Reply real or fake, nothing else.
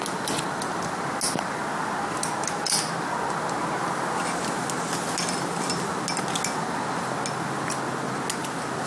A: real